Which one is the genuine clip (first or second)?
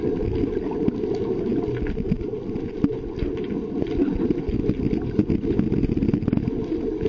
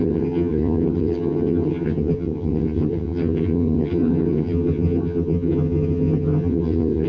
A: first